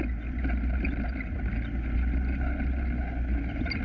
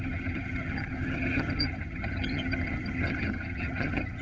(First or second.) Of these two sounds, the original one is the first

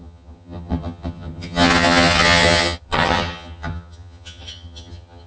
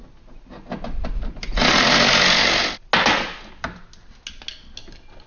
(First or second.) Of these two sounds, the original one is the second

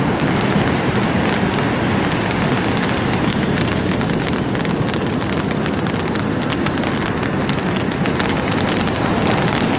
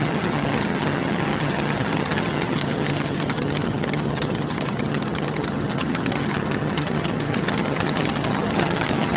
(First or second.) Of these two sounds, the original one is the first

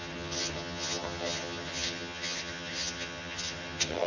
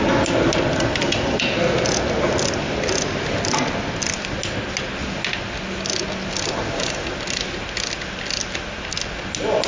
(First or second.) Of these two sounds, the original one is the second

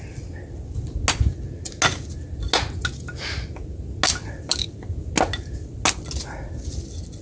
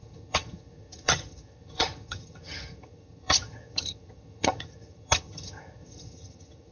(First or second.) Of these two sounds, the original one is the first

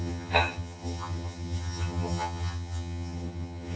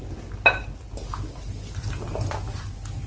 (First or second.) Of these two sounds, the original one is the second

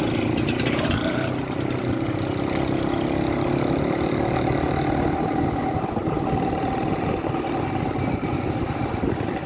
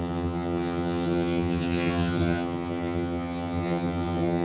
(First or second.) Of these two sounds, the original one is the first